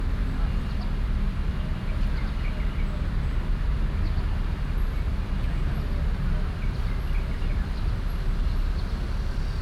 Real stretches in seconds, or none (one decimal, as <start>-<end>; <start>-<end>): 0.0-9.6